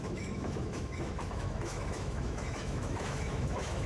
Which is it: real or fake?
fake